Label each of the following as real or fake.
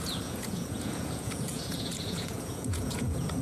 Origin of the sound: fake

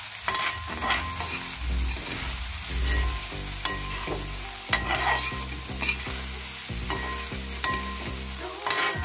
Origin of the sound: real